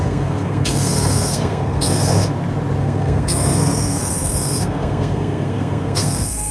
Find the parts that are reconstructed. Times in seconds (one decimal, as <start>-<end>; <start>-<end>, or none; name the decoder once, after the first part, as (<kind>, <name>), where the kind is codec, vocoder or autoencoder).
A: 0.0-2.3 (codec, SNAC); 2.8-6.5